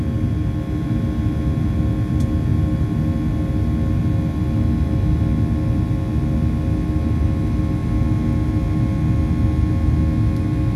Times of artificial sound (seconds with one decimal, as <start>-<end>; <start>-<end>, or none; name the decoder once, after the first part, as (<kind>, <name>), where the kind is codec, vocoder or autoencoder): none